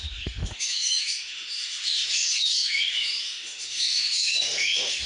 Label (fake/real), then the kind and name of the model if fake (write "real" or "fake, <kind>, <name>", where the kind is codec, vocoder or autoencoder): fake, autoencoder, DAC-VAE